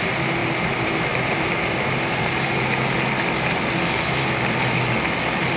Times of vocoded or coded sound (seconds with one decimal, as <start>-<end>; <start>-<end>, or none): 0.4-2.6

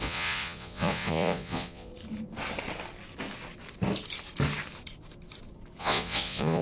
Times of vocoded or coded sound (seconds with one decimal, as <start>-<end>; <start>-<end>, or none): 0.0-1.9; 5.8-6.6

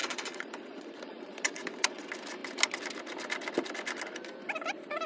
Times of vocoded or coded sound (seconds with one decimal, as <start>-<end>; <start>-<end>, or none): 0.0-2.0

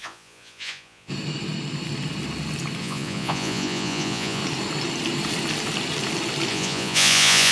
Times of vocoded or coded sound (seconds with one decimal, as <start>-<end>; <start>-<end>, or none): 0.0-1.1; 2.8-4.4; 6.5-7.5

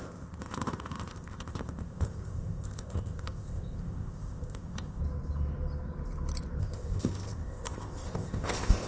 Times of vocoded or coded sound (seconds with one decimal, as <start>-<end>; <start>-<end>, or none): 0.0-5.0; 6.6-8.9

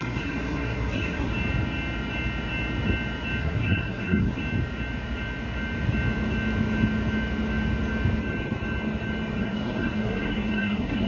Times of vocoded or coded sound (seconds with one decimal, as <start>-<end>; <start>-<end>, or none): 0.0-1.3; 3.4-4.4; 9.4-11.1

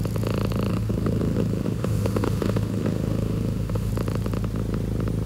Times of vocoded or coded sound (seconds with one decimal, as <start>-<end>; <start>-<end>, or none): 0.7-3.9